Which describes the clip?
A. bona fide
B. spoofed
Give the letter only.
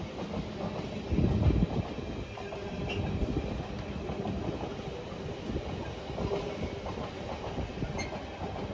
A